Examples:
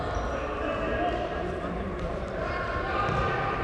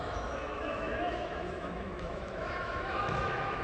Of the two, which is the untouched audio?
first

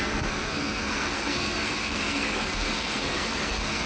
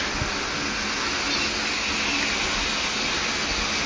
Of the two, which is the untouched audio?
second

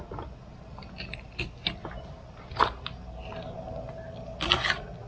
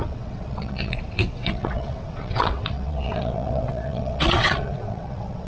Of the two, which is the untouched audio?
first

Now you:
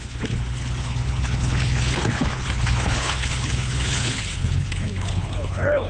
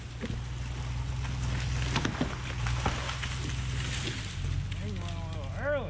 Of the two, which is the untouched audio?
second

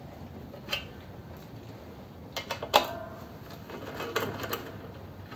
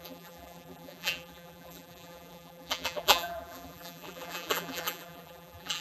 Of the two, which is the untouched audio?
first